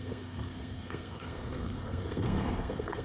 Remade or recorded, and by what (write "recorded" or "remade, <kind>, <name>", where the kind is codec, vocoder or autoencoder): remade, codec, SNAC